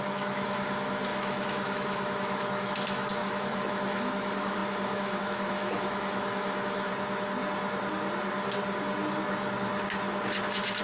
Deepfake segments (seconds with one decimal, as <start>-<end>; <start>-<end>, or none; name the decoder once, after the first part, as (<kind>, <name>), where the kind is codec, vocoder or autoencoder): 0.0-6.9 (autoencoder, DAC-VAE)